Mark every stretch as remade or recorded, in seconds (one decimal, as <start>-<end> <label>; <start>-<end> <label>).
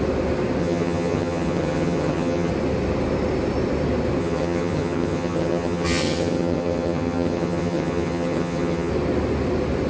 0.0-0.6 recorded; 0.6-2.5 remade; 2.5-4.2 recorded; 4.2-8.9 remade; 8.9-9.9 recorded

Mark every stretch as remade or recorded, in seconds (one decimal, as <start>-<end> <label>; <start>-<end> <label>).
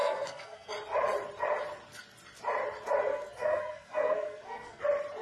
0.0-0.7 remade; 0.7-3.1 recorded; 3.1-4.8 remade; 4.8-5.2 recorded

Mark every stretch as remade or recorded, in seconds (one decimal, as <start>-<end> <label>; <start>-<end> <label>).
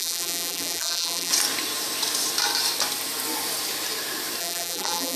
0.0-1.3 remade; 1.3-4.4 recorded; 4.4-5.2 remade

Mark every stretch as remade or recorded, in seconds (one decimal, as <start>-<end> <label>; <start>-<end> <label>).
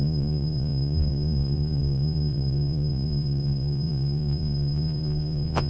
0.0-5.7 remade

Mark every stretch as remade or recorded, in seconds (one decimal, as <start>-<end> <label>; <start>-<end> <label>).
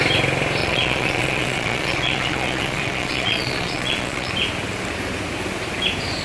0.0-0.6 recorded; 0.6-4.3 remade; 4.3-6.2 recorded